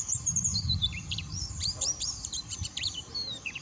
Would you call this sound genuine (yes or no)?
no